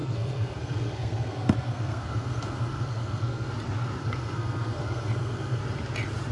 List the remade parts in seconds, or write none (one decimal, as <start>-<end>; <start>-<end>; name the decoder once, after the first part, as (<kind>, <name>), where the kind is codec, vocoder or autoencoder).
0.0-3.5 (codec, SNAC); 4.0-5.6